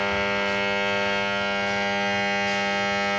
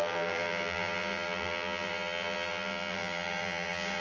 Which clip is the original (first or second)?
first